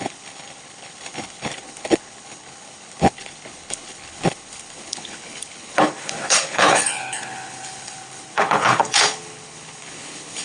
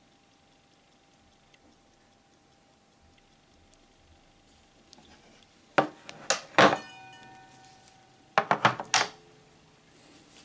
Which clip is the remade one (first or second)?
first